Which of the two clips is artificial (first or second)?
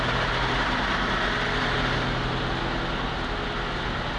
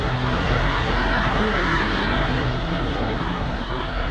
second